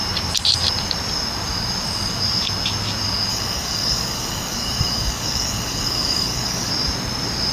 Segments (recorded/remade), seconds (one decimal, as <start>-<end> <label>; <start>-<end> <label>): 0.0-3.3 recorded; 3.3-6.7 remade; 6.7-7.5 recorded